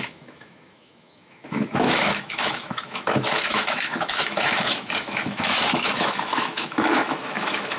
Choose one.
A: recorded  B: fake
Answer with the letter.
B